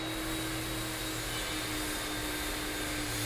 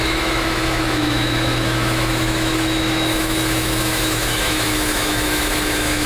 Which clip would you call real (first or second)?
first